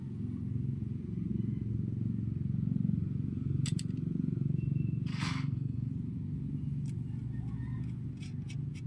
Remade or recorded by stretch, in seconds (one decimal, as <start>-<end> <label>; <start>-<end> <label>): 0.0-5.1 recorded; 5.1-5.9 remade; 5.9-8.9 recorded